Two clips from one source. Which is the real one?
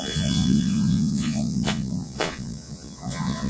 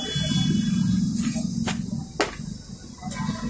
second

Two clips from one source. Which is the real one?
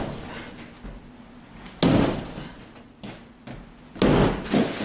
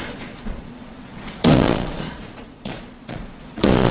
first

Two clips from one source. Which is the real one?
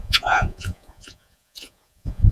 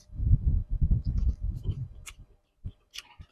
second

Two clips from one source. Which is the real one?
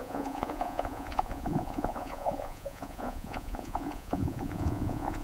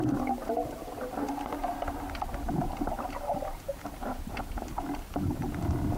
second